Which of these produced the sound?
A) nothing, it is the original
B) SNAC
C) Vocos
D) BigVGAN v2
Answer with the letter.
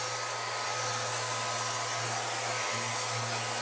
A